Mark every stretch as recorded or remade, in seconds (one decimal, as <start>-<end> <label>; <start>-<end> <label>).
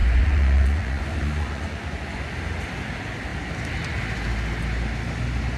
0.0-2.3 remade; 2.3-5.6 recorded